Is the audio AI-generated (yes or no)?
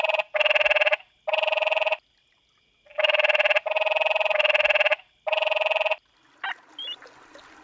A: no